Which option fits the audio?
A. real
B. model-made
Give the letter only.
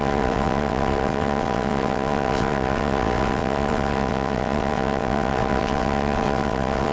B